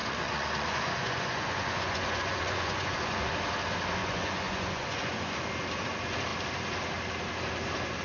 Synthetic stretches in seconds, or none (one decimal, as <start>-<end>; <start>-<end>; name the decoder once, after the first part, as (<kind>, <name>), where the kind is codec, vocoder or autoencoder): 0.0-3.3 (vocoder, Vocos); 4.0-5.4